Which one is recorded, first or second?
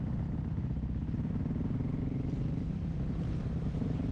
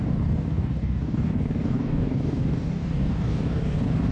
first